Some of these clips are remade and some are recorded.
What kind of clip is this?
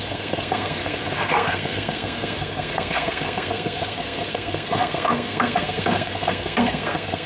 remade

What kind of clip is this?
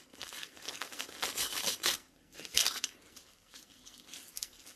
remade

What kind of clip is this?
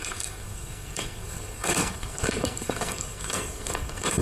remade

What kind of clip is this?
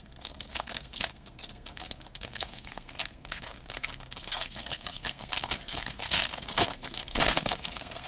remade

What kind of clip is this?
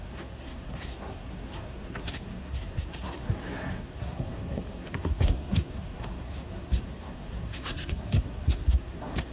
remade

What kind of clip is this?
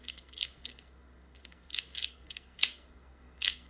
remade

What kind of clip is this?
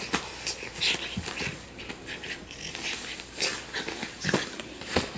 recorded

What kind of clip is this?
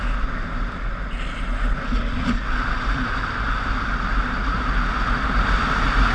recorded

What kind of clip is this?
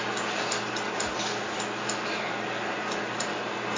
recorded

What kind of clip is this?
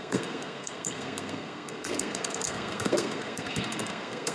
remade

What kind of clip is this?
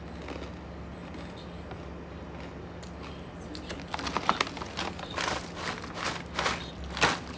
recorded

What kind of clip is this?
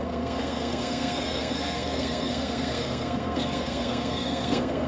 remade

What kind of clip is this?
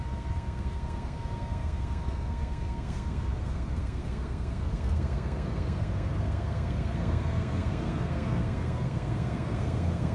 remade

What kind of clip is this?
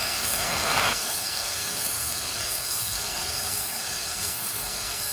remade